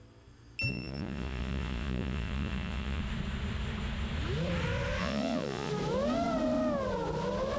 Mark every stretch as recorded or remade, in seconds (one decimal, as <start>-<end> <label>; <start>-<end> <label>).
0.0-0.7 recorded; 0.7-3.0 remade; 3.0-5.0 recorded; 5.0-5.7 remade; 5.7-7.6 recorded